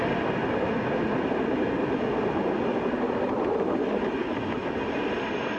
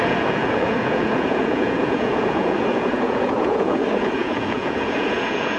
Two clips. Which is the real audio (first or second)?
first